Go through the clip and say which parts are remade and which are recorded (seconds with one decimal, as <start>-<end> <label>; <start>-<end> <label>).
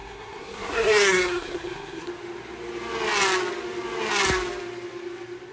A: 0.0-2.1 remade; 2.1-5.5 recorded